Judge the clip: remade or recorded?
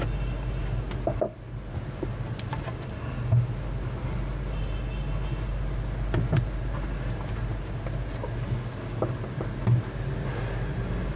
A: recorded